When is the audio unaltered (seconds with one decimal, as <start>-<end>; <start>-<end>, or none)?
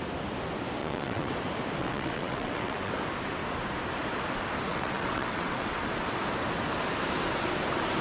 0.0-0.8; 1.3-1.8; 2.9-4.7; 5.8-8.0